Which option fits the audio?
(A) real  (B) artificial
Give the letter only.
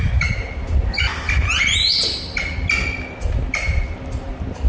A